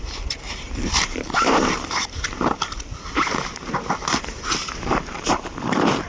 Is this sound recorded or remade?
remade